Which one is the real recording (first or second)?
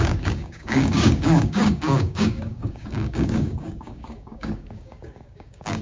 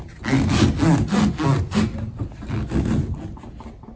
second